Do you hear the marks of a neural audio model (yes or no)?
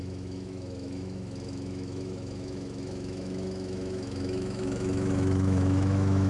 yes